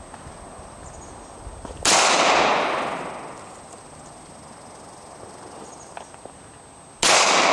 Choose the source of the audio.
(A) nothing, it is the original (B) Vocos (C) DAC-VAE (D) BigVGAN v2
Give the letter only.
A